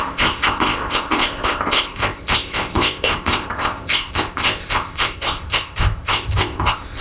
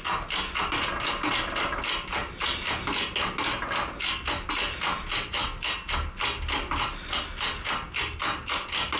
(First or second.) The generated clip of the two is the first